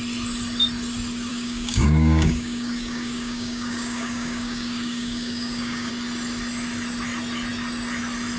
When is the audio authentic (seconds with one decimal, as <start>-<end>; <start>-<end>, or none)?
0.0-1.3; 5.9-8.4